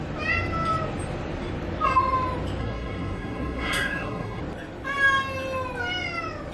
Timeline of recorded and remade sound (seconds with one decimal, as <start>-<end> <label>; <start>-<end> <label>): 0.0-2.6 recorded; 2.6-4.4 remade; 4.4-6.5 recorded